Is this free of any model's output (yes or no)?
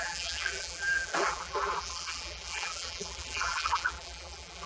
no